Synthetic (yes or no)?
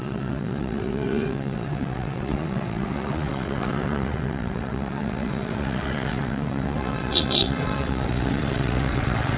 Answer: yes